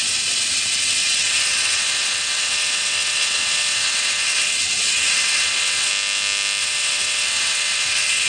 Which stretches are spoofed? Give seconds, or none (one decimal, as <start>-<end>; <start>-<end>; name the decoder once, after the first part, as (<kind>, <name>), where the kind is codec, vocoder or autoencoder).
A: 0.0-5.9 (vocoder, WaveNeXt); 6.6-8.3